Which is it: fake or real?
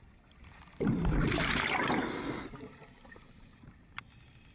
real